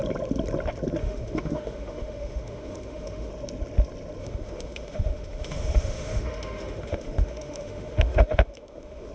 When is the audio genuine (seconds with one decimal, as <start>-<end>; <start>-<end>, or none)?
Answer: 0.0-1.0; 3.3-4.2